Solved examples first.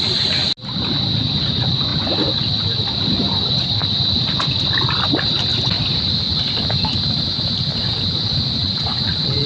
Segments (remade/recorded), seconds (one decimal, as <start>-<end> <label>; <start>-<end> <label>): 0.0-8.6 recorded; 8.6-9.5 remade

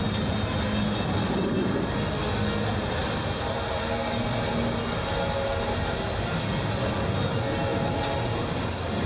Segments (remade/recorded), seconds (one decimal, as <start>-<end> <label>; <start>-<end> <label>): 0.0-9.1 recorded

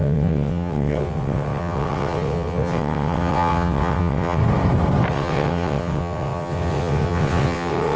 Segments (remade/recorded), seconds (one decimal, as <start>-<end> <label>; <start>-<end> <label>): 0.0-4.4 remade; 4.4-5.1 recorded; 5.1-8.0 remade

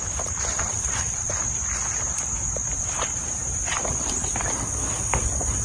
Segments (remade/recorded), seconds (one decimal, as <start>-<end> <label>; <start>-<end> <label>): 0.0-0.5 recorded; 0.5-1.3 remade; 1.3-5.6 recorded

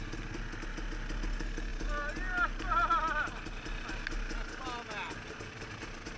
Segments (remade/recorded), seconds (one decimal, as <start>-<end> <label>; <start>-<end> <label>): 0.0-6.2 recorded

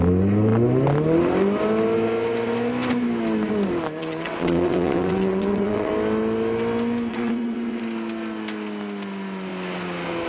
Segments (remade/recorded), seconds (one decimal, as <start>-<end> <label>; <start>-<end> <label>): 0.0-4.0 recorded; 4.0-5.9 remade; 5.9-7.1 recorded; 7.1-7.8 remade; 7.8-10.3 recorded

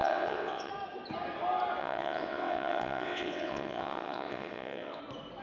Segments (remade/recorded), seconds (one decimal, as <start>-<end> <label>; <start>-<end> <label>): 0.0-0.7 remade; 0.7-1.8 recorded; 1.8-5.0 remade; 5.0-5.4 recorded